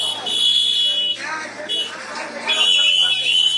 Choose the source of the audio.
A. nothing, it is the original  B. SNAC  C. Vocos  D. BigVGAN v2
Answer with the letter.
A